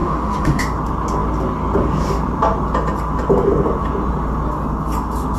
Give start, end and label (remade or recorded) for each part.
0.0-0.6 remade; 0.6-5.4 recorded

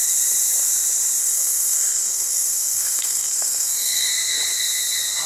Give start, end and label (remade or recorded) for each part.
0.0-1.2 recorded; 1.2-4.1 remade; 4.1-5.3 recorded

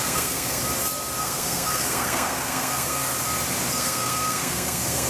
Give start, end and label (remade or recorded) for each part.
0.0-0.6 remade; 0.6-1.2 recorded; 1.2-3.1 remade; 3.1-3.7 recorded; 3.7-5.1 remade